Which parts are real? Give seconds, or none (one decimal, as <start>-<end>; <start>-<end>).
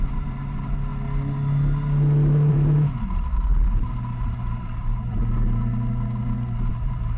0.9-2.5; 5.2-6.7